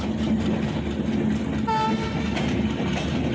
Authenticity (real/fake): real